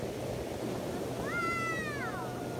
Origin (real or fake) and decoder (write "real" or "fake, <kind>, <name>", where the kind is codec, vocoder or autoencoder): real